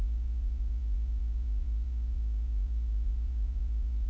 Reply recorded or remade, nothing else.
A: remade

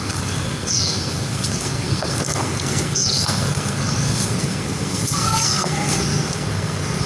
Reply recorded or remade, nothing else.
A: remade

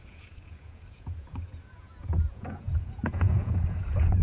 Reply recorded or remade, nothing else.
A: remade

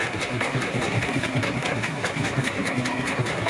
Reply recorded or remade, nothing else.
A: remade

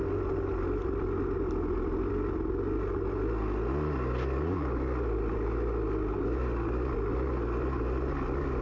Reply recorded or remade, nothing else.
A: recorded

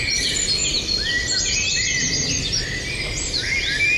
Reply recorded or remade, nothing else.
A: recorded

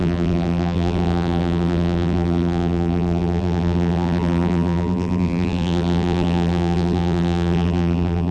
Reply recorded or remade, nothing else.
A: remade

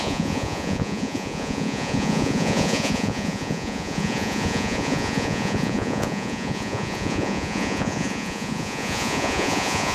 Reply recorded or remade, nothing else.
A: remade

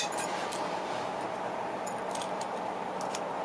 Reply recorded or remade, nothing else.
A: recorded